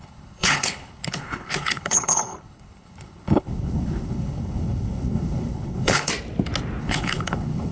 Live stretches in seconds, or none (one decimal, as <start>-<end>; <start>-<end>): 6.1-6.8